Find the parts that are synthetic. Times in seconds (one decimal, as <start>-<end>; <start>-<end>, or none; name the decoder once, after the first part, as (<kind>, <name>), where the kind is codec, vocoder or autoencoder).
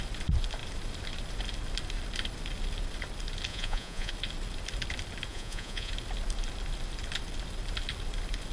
3.5-4.1 (vocoder, Vocos); 5.3-5.9